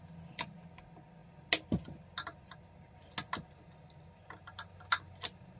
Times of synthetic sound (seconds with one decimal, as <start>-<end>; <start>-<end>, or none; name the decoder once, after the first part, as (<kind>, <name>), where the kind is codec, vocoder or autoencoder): none